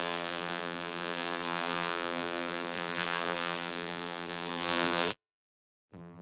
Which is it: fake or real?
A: fake